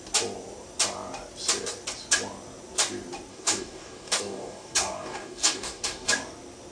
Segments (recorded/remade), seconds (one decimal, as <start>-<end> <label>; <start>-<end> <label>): 0.0-3.3 recorded; 3.3-6.1 remade; 6.1-6.7 recorded